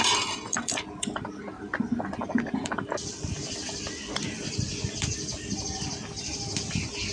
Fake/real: fake